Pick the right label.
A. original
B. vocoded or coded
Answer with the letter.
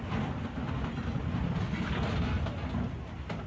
A